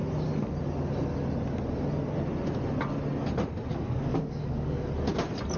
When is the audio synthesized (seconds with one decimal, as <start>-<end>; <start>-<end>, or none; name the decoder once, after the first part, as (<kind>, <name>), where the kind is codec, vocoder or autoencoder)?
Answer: 3.7-4.9 (codec, DAC)